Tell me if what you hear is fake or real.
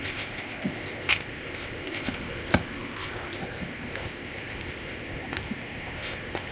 fake